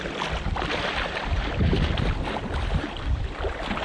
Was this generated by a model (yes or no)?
no